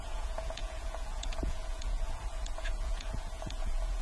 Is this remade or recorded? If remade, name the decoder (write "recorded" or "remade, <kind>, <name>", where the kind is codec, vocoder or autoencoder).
remade, vocoder, Vocos